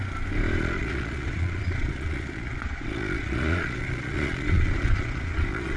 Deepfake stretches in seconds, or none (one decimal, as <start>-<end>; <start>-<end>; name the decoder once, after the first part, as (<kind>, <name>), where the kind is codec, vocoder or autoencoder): 0.6-5.8 (vocoder, Vocos)

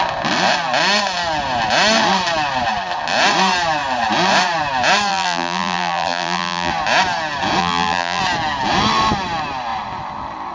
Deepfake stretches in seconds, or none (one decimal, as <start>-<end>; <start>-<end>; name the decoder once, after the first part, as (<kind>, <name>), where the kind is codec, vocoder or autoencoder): 5.1-6.7 (vocoder, BigVGAN v2); 7.6-8.2

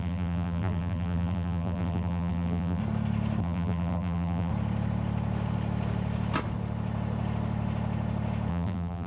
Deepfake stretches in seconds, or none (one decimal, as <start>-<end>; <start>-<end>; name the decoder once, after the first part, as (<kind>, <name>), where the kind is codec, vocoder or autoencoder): 0.0-2.8 (vocoder, BigVGAN v2); 3.4-4.5; 8.5-9.1

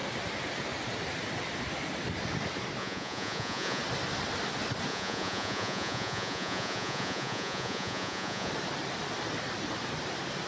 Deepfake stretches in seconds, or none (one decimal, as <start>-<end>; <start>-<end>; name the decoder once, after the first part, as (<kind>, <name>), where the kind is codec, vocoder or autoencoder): 2.8-3.8 (vocoder, Vocos); 4.9-8.5